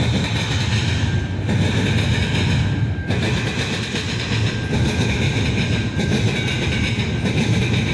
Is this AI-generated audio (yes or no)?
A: no